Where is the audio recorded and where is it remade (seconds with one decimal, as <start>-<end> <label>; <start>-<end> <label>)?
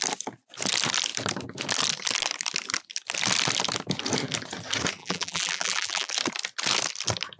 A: 0.0-5.0 recorded; 5.0-6.1 remade; 6.1-7.4 recorded